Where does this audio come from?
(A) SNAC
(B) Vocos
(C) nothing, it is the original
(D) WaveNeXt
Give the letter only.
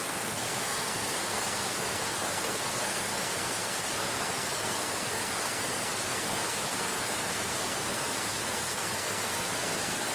A